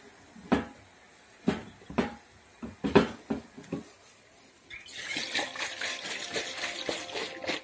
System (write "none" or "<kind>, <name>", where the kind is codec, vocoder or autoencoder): none